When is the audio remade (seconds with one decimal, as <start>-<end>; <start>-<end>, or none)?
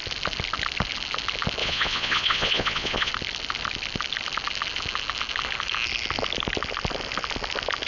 1.6-3.1